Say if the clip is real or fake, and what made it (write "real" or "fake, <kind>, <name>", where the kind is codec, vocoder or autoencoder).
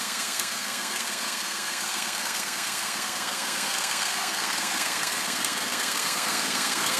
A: fake, codec, SNAC